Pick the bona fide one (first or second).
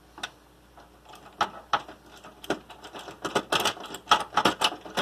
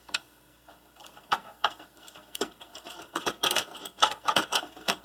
first